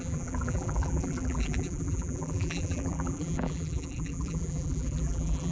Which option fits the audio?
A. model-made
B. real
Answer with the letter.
A